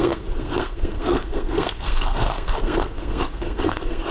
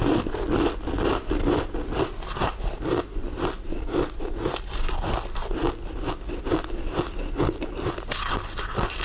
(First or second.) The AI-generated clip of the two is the first